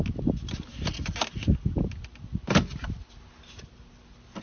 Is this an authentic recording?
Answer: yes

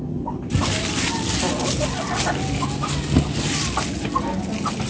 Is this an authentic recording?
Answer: yes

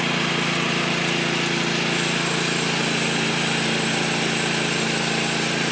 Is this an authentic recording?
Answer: yes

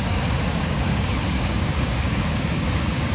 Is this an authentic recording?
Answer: no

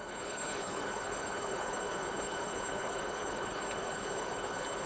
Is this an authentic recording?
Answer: no